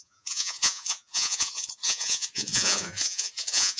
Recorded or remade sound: remade